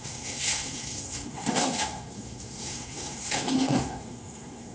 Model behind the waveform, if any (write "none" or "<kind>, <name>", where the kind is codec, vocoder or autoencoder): codec, SNAC